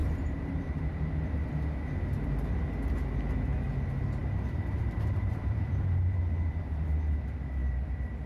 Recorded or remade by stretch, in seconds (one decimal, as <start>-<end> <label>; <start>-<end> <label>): 0.0-0.8 remade; 0.8-4.2 recorded; 4.2-5.8 remade; 5.8-8.3 recorded